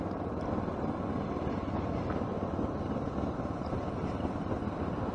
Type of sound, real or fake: real